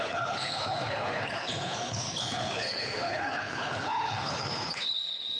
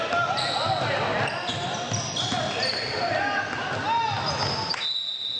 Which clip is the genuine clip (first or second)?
second